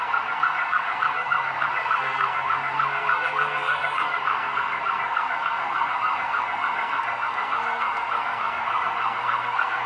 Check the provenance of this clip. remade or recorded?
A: remade